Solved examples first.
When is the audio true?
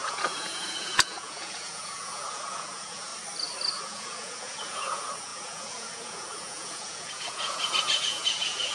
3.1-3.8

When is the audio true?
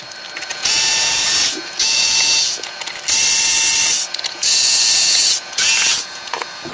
0.0-0.5; 2.9-4.0